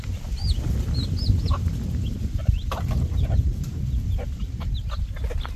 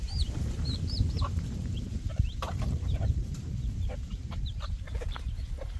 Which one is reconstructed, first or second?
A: second